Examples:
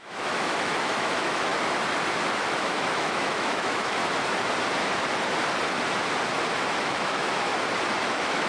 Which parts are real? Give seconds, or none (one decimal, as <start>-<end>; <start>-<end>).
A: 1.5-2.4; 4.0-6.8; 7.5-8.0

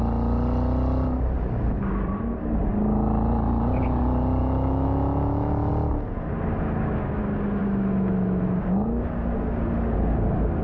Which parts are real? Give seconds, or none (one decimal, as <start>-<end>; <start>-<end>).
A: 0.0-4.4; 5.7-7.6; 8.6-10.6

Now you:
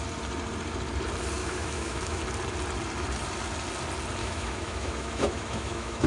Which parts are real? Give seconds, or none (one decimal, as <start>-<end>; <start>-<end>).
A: 0.0-1.4; 2.2-4.2

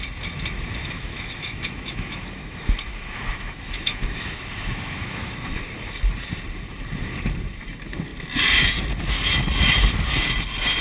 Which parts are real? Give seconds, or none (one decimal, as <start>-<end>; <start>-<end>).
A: 0.0-0.8; 5.6-10.8